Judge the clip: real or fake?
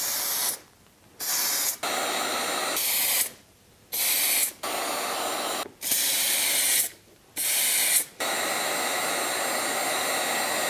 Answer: real